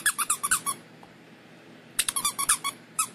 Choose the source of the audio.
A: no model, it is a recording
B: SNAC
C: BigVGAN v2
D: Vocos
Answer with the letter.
C